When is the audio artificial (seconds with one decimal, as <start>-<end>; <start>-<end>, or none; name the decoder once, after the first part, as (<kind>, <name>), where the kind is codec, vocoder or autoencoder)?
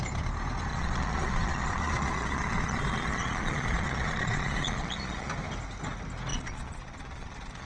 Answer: 0.7-5.3 (vocoder, Vocos); 6.3-7.7